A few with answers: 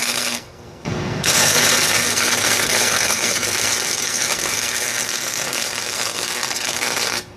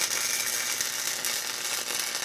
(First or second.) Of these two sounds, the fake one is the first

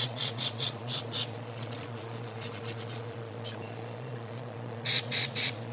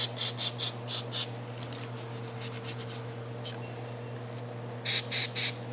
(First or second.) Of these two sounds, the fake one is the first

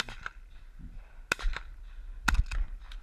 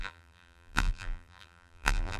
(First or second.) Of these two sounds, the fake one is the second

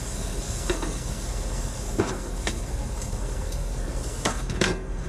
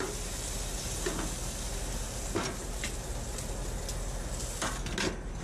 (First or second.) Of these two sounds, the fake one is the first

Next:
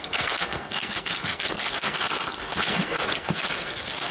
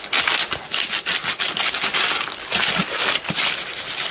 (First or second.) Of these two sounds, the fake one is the first